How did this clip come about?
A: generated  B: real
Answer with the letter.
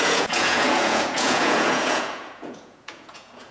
A